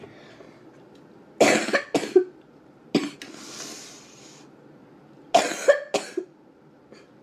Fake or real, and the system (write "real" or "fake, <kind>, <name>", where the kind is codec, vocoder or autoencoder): real